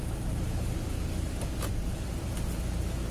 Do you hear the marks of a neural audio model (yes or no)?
no